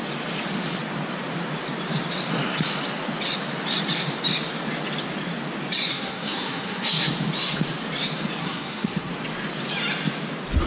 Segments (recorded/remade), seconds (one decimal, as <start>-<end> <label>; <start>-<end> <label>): 0.0-5.9 recorded; 5.9-7.1 remade; 7.1-8.4 recorded; 8.4-9.1 remade; 9.1-10.7 recorded